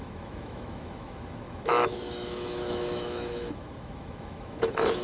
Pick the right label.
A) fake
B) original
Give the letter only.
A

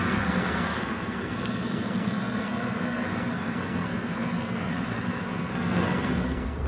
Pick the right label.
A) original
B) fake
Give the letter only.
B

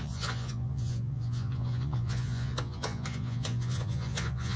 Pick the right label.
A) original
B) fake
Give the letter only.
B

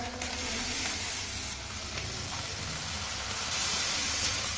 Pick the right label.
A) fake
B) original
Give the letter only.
B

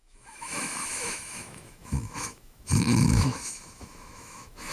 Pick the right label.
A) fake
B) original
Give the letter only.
A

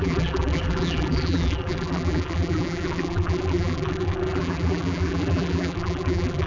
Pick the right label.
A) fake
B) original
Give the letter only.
A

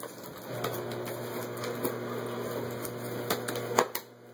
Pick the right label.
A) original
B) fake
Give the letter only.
A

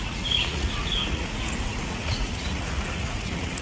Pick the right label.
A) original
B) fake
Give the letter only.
B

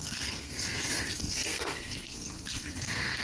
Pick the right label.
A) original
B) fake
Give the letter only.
B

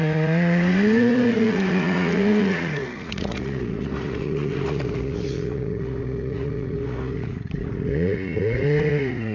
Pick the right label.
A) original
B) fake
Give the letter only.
B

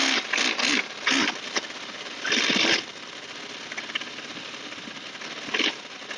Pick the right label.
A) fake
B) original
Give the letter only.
B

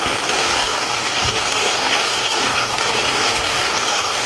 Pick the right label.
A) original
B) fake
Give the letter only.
B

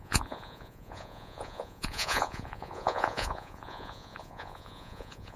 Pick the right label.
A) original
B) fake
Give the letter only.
B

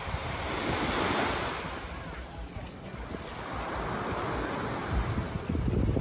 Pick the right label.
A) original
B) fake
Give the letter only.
A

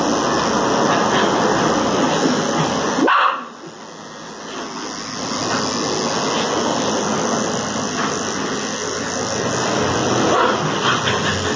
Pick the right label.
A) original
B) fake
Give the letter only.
A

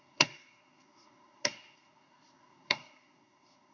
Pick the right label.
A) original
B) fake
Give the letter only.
B